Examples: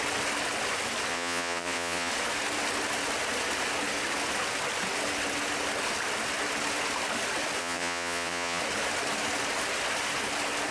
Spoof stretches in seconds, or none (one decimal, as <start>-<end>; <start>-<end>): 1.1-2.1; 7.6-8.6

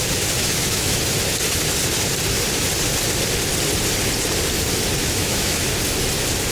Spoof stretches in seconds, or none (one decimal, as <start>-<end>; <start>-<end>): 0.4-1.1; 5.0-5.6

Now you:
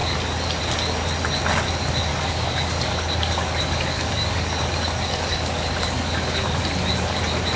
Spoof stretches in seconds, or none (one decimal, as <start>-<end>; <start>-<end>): 2.1-6.6

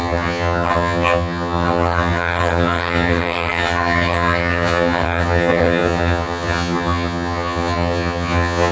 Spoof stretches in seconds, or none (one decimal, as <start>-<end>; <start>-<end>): 0.0-8.7

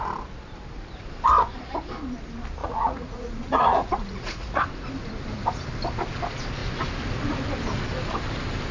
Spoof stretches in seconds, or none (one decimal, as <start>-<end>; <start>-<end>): 2.6-4.6